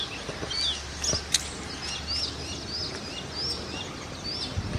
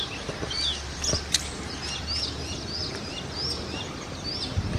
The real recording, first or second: first